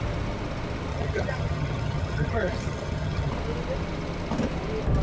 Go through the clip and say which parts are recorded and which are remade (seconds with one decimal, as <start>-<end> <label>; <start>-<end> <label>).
0.0-0.9 recorded; 0.9-3.3 remade; 3.3-5.0 recorded